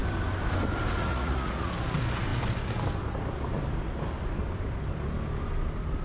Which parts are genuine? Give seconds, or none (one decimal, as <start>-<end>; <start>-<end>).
0.0-1.0; 1.7-6.0